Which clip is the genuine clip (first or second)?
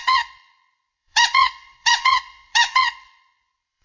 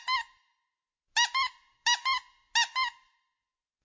second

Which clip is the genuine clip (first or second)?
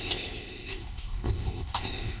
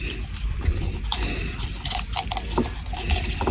second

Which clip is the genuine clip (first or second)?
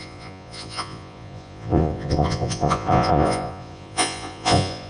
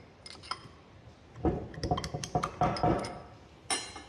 second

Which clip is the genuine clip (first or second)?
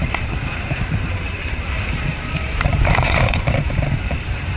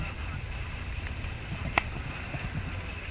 second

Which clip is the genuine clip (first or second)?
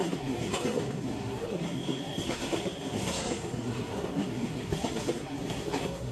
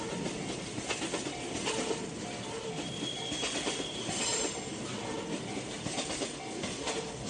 second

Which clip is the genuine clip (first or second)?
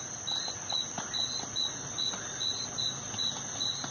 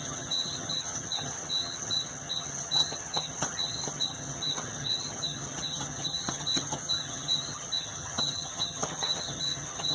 first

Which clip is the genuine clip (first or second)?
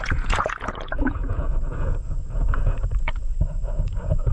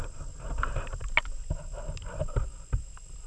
second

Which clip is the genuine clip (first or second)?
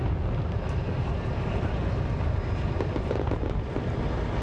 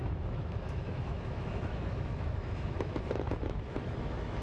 first